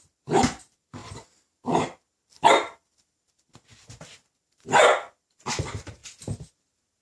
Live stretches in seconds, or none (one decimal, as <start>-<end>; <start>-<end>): 1.0-5.2; 6.0-6.5

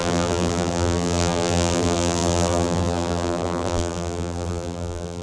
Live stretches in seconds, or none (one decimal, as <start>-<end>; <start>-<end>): none

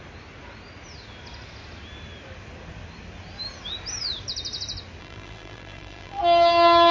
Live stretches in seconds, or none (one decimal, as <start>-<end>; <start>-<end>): 0.0-5.0; 6.2-6.9

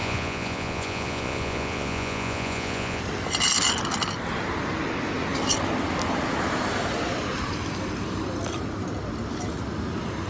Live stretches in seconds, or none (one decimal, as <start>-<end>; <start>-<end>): 3.0-10.3

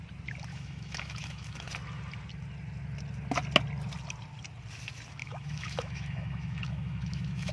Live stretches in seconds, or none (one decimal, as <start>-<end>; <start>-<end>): 0.0-0.5; 1.7-5.2

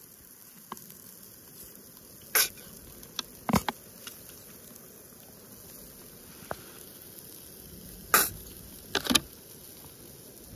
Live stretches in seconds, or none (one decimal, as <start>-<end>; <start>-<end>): 0.0-4.1; 4.7-10.6

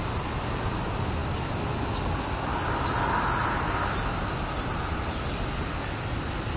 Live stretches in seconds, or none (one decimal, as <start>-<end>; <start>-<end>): 0.0-6.6